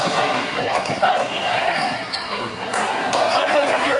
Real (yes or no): no